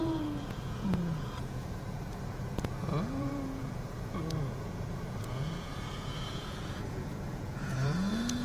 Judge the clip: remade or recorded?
remade